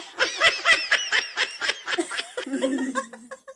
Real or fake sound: real